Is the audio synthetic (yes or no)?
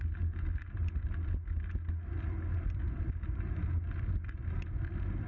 no